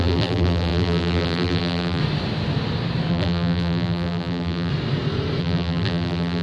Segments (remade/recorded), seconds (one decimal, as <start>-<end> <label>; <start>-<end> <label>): 0.0-2.0 remade; 2.0-3.1 recorded; 3.1-4.7 remade; 4.7-5.4 recorded; 5.4-6.4 remade